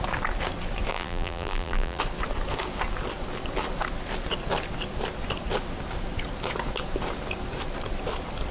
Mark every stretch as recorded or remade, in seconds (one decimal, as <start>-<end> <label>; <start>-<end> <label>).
0.0-0.9 recorded; 0.9-2.0 remade; 2.0-8.5 recorded